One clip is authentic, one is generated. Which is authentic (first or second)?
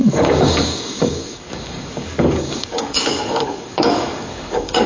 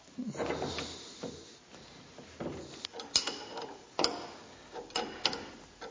second